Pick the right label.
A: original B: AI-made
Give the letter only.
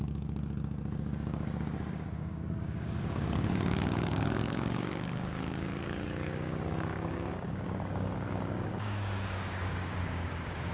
B